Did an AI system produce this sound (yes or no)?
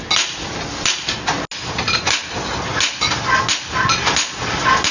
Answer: no